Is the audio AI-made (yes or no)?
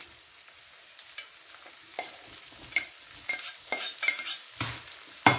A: no